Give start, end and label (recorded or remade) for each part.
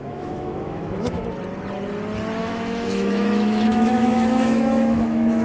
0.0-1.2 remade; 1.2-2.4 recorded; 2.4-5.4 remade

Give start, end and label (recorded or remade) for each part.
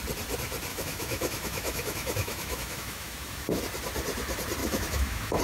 0.0-0.7 recorded; 0.7-3.6 remade; 3.6-4.6 recorded; 4.6-5.4 remade